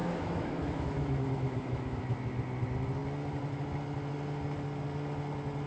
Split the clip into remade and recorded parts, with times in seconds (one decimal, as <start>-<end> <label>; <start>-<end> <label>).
0.0-2.0 remade; 2.0-5.7 recorded